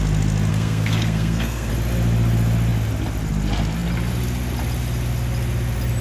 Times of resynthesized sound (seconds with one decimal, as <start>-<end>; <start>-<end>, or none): 0.5-1.7